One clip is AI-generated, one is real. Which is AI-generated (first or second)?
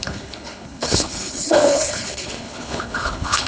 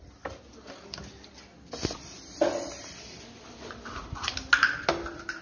first